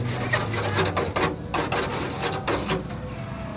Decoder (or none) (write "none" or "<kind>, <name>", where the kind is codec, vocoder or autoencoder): none